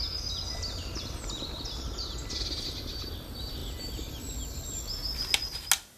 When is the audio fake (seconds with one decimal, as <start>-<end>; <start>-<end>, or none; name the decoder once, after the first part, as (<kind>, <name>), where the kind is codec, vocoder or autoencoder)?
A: none